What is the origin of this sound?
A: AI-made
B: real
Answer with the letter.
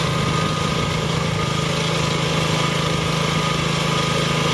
B